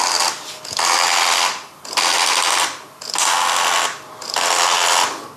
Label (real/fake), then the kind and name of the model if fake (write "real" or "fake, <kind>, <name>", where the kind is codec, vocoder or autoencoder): real